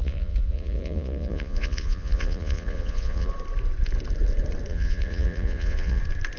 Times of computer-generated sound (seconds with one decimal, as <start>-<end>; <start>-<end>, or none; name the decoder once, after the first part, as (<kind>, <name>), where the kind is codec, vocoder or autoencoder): 0.0-3.3 (vocoder, Vocos); 4.7-6.0